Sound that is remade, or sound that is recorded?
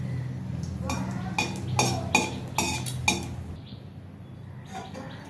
recorded